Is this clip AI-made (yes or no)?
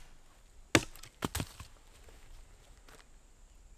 no